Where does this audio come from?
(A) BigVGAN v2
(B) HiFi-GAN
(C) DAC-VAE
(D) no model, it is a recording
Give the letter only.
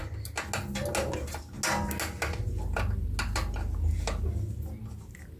D